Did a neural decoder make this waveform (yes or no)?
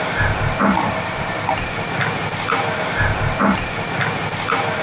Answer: no